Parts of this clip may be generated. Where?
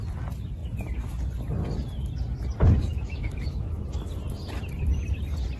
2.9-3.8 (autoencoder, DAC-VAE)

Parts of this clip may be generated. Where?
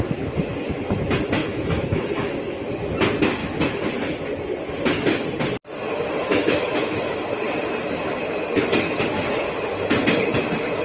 1.4-2.3 (autoencoder, DAC-VAE); 3.4-3.9; 6.2-7.1